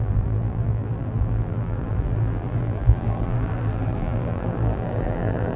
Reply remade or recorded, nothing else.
remade